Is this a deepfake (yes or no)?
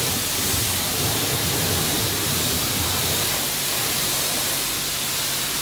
yes